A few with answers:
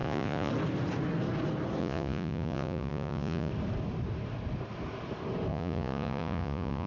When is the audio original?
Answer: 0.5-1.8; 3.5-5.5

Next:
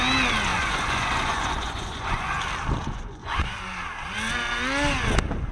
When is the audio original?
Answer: 0.0-0.5; 2.3-2.8; 3.5-5.5

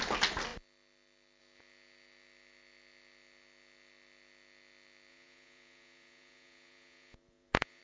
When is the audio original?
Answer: 0.0-5.1

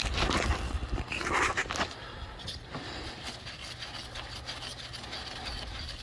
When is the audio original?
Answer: 0.0-6.0

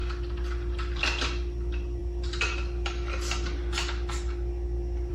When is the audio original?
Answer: 0.0-5.1

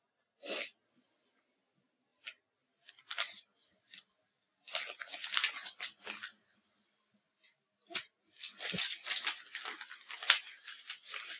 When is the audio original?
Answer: 0.0-11.4